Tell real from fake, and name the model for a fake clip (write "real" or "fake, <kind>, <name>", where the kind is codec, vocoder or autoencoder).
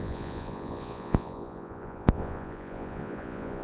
fake, vocoder, Vocos